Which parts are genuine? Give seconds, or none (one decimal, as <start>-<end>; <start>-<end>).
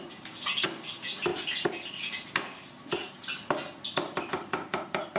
0.0-5.2